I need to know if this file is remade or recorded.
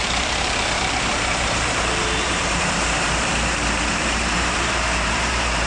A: remade